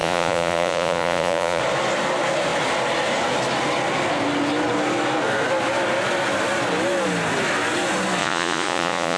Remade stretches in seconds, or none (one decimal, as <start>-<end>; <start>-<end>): 0.0-1.6; 8.2-9.2